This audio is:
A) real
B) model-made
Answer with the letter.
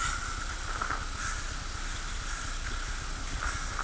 A